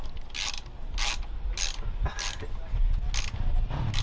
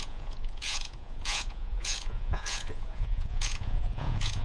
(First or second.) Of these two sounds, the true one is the first